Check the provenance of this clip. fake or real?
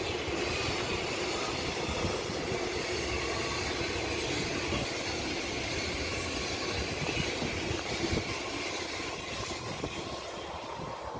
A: real